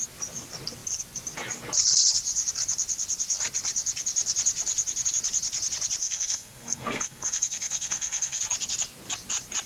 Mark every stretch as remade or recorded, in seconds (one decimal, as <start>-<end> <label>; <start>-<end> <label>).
0.0-6.0 recorded; 6.0-8.4 remade; 8.4-9.7 recorded